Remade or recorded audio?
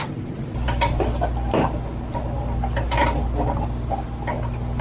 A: recorded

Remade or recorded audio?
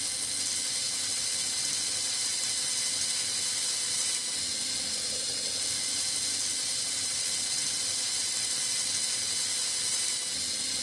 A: recorded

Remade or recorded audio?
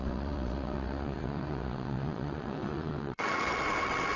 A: remade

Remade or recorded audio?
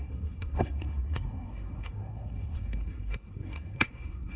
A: remade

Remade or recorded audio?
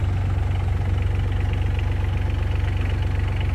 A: recorded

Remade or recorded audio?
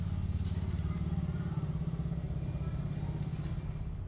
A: recorded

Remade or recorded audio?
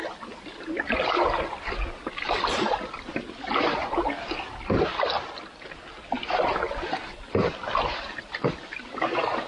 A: recorded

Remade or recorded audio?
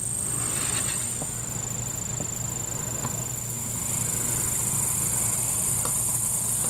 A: recorded